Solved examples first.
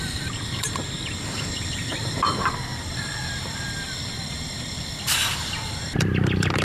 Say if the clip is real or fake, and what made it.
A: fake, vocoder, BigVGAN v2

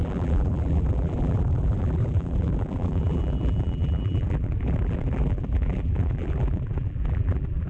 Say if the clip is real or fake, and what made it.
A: fake, vocoder, BigVGAN v2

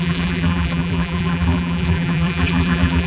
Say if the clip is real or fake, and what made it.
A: fake, vocoder, BigVGAN v2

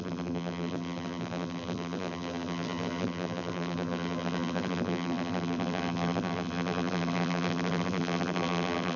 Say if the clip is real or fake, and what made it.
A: fake, vocoder, BigVGAN v2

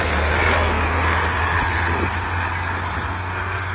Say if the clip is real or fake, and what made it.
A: real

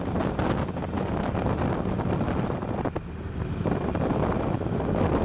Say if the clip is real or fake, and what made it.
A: fake, vocoder, BigVGAN v2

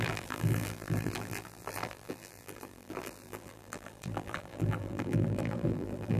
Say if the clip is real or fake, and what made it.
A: fake, vocoder, BigVGAN v2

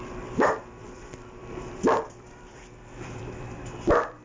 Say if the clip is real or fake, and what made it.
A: fake, vocoder, BigVGAN v2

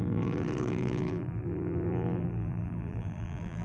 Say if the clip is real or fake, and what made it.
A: fake, vocoder, BigVGAN v2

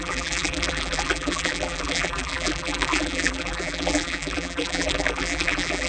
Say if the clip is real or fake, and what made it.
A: fake, vocoder, BigVGAN v2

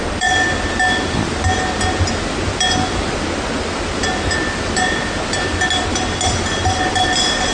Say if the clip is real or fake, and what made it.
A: real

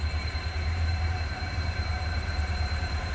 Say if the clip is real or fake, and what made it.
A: fake, vocoder, BigVGAN v2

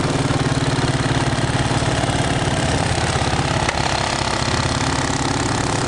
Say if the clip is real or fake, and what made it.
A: real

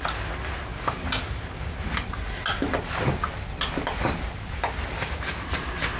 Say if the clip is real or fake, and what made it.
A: real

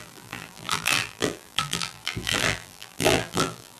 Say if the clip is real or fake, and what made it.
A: fake, vocoder, BigVGAN v2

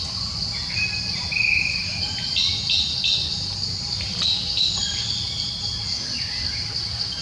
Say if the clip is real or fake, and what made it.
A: fake, vocoder, BigVGAN v2